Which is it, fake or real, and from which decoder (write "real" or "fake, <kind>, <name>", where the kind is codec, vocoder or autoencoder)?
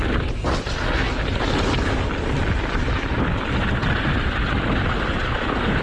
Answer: real